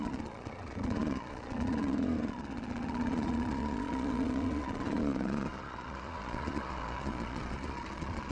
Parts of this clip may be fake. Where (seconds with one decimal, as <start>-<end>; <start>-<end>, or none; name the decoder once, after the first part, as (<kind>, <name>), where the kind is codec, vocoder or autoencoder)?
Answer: 0.0-8.3 (vocoder, Vocos)